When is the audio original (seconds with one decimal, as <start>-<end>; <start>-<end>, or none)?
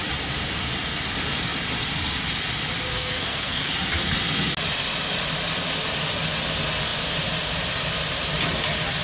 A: 0.0-2.9; 3.7-9.0